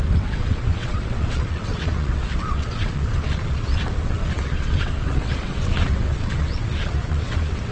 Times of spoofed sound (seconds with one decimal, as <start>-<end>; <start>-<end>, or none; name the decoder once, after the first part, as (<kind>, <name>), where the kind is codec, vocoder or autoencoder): 0.0-7.7 (vocoder, WaveNeXt)